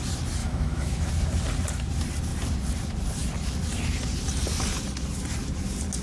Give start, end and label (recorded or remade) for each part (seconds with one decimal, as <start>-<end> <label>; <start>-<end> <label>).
0.0-0.4 recorded; 0.4-1.1 remade; 1.1-6.0 recorded